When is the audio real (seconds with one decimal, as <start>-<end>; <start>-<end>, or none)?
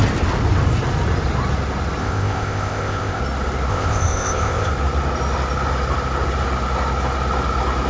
0.0-2.0; 3.2-3.7; 4.7-7.9